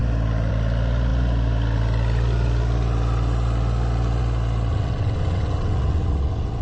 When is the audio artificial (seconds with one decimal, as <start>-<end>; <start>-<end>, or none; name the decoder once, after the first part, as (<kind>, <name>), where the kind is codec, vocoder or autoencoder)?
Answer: 4.7-6.6 (vocoder, WaveNeXt)